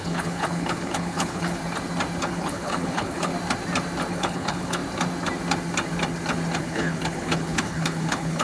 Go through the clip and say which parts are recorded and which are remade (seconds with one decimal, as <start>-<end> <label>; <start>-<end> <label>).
0.0-1.6 remade; 1.6-2.2 recorded; 2.2-3.3 remade; 3.3-4.1 recorded; 4.1-4.8 remade; 4.8-6.6 recorded; 6.6-8.4 remade